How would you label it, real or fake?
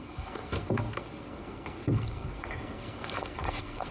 fake